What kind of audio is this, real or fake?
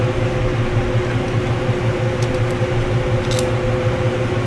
real